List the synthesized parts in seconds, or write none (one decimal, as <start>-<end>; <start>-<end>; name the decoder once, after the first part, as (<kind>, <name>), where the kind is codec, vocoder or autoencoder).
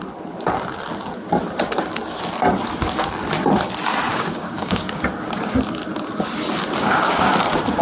4.1-5.0 (codec, DAC); 6.8-7.3